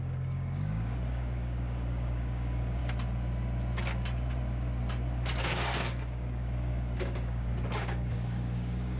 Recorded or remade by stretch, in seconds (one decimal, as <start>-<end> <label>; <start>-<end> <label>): 0.0-2.8 remade; 2.8-5.4 recorded; 5.4-9.0 remade